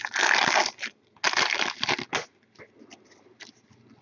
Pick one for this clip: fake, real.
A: real